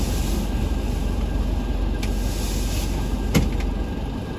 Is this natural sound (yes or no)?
yes